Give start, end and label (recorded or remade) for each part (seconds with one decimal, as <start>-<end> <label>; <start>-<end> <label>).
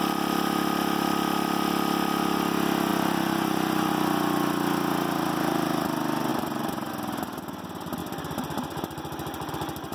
0.0-2.9 recorded; 2.9-3.9 remade; 3.9-6.3 recorded; 6.3-6.9 remade; 6.9-9.9 recorded